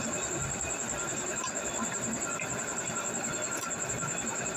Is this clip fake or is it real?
fake